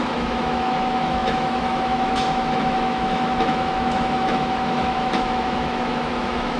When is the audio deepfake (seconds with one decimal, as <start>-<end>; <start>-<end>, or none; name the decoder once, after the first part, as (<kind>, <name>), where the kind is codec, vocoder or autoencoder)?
0.0-6.6 (autoencoder, DAC-VAE)